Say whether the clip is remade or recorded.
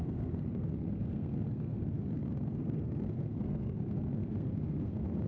remade